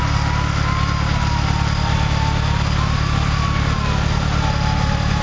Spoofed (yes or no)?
no